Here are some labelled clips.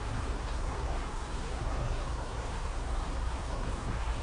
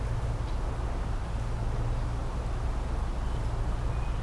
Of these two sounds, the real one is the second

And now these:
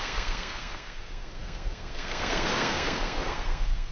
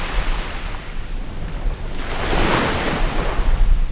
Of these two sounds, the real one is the second